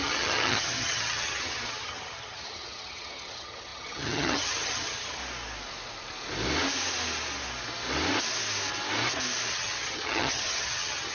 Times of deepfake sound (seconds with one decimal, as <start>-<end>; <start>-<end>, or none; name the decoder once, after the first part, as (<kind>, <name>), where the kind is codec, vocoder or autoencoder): 0.0-5.2 (vocoder, HiFi-GAN); 9.5-11.1